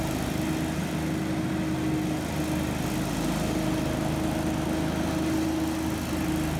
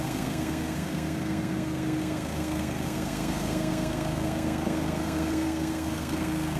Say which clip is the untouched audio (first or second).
first